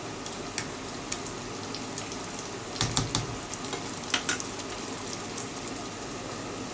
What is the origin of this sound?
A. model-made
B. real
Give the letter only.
B